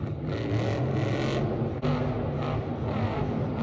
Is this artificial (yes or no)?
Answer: no